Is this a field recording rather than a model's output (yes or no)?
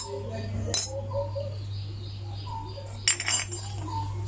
yes